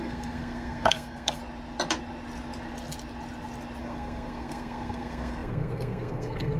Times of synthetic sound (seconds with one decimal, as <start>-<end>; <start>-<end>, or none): 0.0-1.4; 3.8-6.6